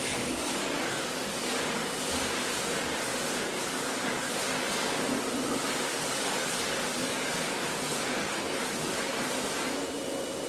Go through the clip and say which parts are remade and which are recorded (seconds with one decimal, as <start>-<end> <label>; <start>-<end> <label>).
0.0-1.8 remade; 1.8-3.6 recorded; 3.6-4.4 remade; 4.4-5.8 recorded; 5.8-9.1 remade; 9.1-10.5 recorded